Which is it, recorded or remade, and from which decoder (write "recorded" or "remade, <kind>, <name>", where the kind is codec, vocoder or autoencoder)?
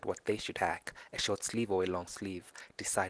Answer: recorded